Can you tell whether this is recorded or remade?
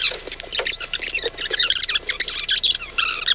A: recorded